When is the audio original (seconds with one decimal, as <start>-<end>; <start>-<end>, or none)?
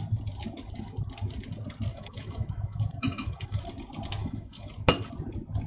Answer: 0.0-1.9; 3.6-4.2; 4.7-5.7